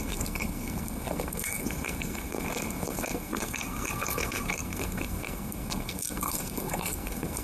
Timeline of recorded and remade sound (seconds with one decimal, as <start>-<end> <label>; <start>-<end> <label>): 0.0-7.4 remade